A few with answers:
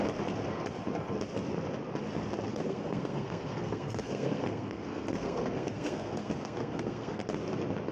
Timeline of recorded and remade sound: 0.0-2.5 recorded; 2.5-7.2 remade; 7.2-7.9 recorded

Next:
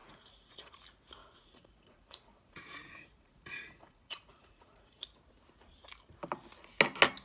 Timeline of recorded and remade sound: 0.0-0.7 remade; 0.7-1.2 recorded; 1.2-5.0 remade; 5.0-7.2 recorded

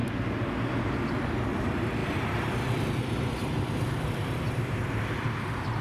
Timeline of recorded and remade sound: 0.0-1.6 recorded; 1.6-5.8 remade

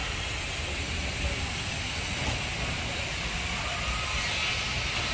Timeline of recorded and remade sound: 0.0-5.1 recorded

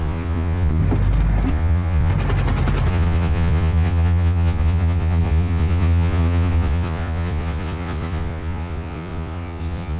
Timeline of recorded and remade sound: 0.0-0.8 remade; 0.8-1.5 recorded; 1.5-2.1 remade; 2.1-2.9 recorded; 2.9-10.0 remade